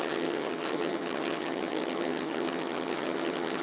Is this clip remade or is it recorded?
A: remade